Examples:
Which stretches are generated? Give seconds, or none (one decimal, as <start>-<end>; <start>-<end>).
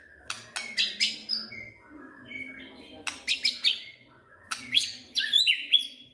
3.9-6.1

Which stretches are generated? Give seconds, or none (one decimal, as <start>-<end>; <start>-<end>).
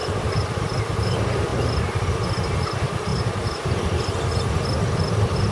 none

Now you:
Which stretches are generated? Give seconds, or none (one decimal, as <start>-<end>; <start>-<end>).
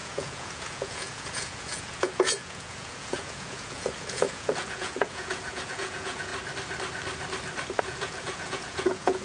0.0-6.3; 7.8-9.2